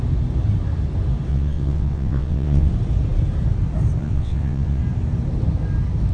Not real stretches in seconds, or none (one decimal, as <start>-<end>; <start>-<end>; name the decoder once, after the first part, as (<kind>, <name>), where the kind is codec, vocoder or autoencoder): 1.3-2.7 (vocoder, WaveNeXt); 4.0-4.8